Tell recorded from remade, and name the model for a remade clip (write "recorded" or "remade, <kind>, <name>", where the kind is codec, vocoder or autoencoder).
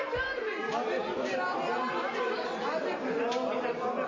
recorded